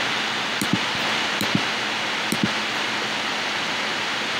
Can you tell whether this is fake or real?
real